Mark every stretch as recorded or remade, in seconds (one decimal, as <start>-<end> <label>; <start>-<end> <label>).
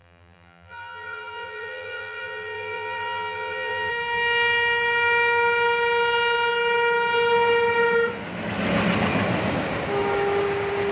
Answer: 0.0-3.9 remade; 3.9-10.9 recorded